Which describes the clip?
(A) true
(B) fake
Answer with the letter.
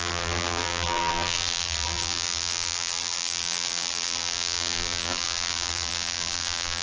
B